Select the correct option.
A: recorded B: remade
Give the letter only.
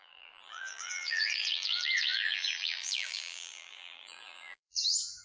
B